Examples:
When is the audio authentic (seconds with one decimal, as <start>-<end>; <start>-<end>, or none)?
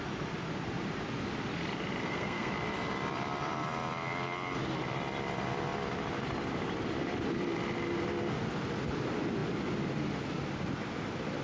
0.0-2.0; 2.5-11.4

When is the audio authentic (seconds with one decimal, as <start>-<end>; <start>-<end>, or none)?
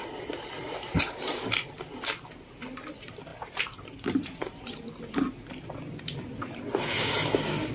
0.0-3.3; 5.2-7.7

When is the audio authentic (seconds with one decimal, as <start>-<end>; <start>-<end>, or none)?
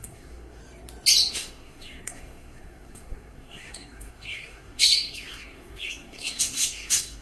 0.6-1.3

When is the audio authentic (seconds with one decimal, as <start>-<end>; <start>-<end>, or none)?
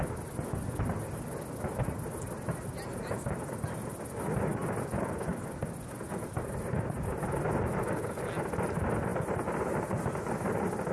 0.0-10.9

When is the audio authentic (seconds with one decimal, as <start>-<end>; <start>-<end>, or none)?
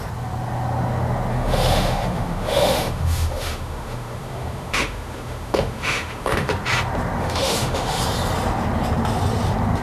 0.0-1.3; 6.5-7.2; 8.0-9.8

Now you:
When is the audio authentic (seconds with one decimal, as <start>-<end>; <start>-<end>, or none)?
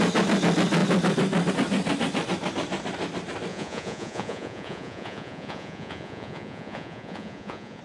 0.0-3.5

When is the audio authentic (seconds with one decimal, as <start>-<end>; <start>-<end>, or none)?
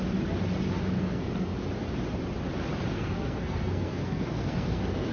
0.0-1.0; 1.5-2.9